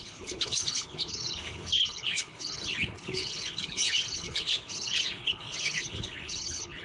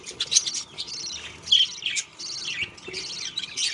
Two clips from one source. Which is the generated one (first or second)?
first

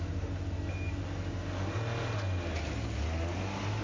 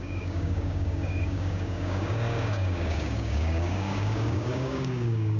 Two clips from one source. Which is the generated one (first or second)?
second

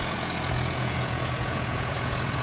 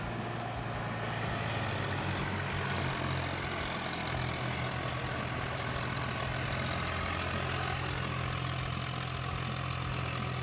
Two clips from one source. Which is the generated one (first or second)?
first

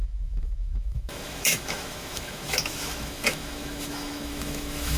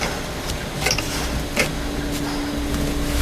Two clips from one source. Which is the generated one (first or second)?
first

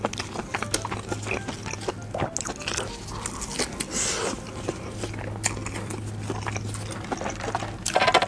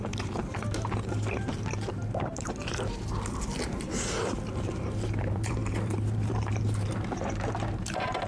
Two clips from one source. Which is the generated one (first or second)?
second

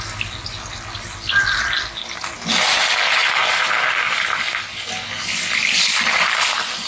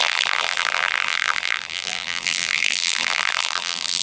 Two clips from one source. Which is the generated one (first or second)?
second